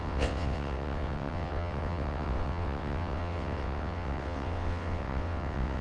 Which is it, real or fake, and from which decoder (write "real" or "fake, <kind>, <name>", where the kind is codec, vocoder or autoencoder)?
fake, vocoder, WaveNeXt